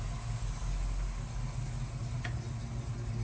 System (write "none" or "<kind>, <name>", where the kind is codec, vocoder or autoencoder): none